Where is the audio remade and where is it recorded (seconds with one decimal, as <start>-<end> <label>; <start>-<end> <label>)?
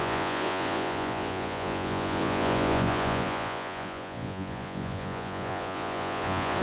0.0-6.6 remade